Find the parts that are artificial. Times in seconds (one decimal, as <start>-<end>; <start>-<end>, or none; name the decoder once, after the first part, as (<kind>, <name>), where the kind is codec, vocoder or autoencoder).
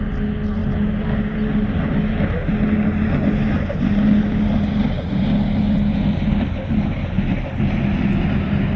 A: none